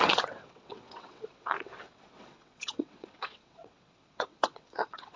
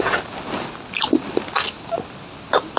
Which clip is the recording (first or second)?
second